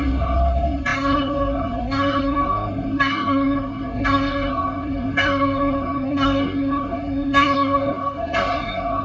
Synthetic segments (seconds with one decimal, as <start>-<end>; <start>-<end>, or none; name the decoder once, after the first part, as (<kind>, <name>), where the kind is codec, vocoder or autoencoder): 0.0-9.0 (codec, SNAC)

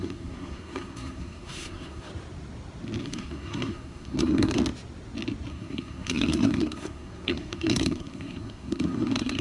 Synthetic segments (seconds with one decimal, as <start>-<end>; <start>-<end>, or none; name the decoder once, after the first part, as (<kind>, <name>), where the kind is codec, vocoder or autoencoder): 0.0-2.1 (codec, SNAC); 3.0-4.6; 5.5-9.4

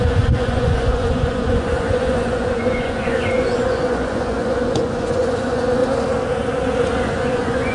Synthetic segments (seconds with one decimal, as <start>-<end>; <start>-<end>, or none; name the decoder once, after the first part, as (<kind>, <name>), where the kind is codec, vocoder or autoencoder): 0.0-5.8 (vocoder, Vocos); 7.0-7.7

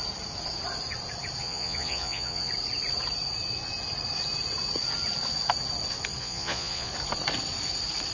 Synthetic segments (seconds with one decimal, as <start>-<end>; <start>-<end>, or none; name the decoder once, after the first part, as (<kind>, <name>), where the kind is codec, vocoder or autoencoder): 1.4-2.5 (vocoder, Vocos); 6.2-6.9

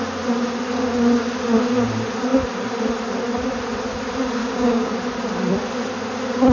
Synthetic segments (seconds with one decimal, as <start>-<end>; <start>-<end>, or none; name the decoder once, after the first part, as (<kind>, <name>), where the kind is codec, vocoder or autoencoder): 4.4-4.9 (codec, DAC)